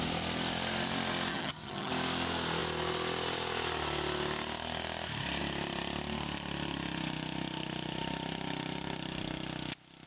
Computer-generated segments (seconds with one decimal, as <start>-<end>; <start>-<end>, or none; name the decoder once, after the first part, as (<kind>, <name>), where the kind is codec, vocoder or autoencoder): 1.3-1.9 (vocoder, HiFi-GAN)